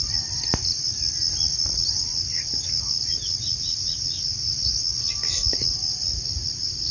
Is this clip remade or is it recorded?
recorded